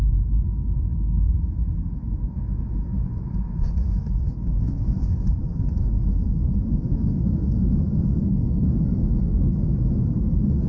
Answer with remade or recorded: remade